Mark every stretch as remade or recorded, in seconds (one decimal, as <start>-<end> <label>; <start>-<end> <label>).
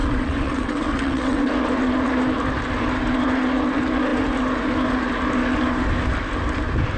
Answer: 0.0-1.5 remade; 1.5-7.0 recorded